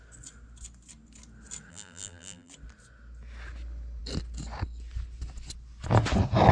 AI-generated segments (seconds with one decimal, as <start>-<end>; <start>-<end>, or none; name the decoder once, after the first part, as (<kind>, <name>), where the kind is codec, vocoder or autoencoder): 1.7-2.5 (vocoder, BigVGAN v2)